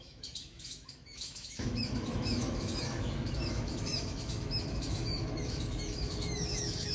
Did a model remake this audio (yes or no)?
yes